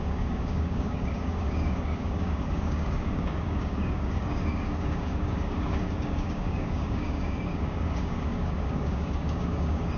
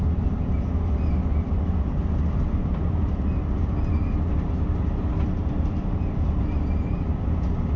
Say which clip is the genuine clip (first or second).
second